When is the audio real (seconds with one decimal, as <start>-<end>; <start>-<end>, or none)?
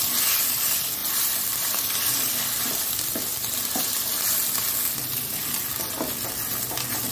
0.0-1.0; 2.4-3.3; 4.6-7.1